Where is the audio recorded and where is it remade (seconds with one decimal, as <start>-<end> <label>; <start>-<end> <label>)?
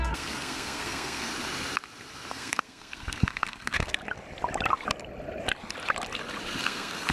0.0-1.3 remade; 1.3-2.3 recorded; 2.3-4.0 remade; 4.0-6.6 recorded; 6.6-7.1 remade